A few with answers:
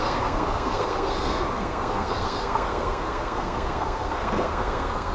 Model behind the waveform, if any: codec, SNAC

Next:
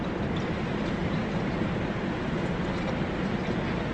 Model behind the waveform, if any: none